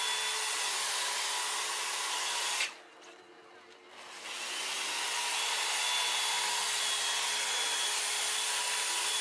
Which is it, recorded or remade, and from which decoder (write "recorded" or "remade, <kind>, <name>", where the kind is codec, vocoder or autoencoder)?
recorded